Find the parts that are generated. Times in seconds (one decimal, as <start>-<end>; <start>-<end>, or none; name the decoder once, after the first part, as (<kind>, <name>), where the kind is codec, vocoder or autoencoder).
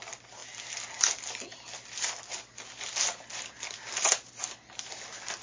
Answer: none